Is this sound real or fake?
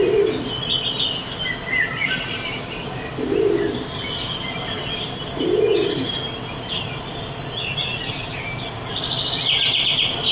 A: real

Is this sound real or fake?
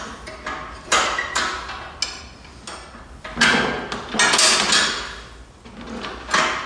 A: real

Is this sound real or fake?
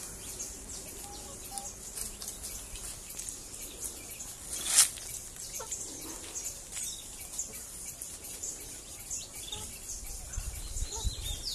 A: real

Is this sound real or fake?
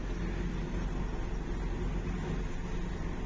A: real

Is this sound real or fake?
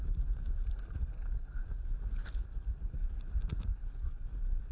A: real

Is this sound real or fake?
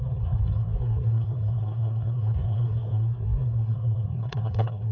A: fake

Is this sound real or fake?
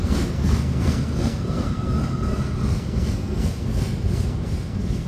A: fake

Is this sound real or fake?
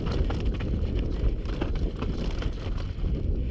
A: real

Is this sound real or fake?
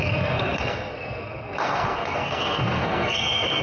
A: fake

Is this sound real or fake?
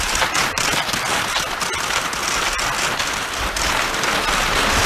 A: real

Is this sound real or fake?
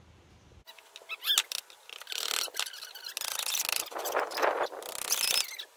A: real